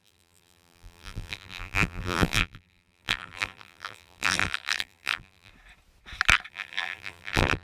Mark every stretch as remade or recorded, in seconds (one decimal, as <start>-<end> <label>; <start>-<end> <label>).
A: 0.0-5.5 remade; 5.5-6.5 recorded; 6.5-7.6 remade